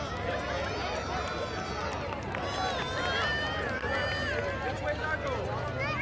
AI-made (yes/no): no